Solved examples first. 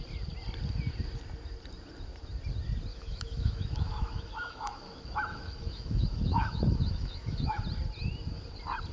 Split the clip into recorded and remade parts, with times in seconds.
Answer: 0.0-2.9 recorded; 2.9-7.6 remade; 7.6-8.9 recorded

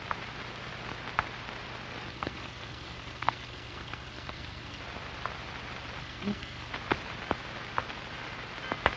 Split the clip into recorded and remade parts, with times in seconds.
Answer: 0.0-2.1 recorded; 2.1-4.8 remade; 4.8-6.0 recorded; 6.0-6.7 remade; 6.7-9.0 recorded

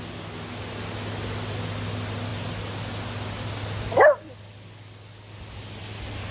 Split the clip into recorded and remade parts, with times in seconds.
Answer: 0.0-6.3 recorded

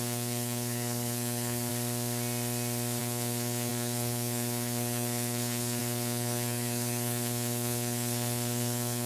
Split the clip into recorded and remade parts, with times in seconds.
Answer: 0.0-1.7 remade; 1.7-3.0 recorded; 3.0-9.1 remade

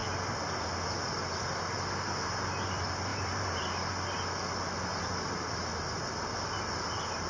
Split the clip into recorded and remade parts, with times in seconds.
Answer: 0.0-3.1 recorded; 3.1-3.6 remade; 3.6-4.9 recorded; 4.9-5.9 remade; 5.9-7.3 recorded

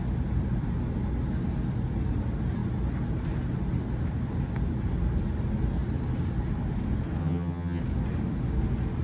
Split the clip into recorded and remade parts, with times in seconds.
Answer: 0.0-7.2 recorded; 7.2-7.8 remade; 7.8-9.0 recorded

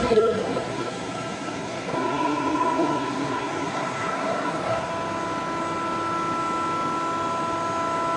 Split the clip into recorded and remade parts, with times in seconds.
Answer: 0.0-4.9 remade; 4.9-8.2 recorded

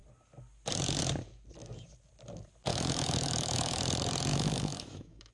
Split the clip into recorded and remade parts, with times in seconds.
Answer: 0.0-2.7 recorded; 2.7-3.8 remade; 3.8-4.3 recorded; 4.3-5.3 remade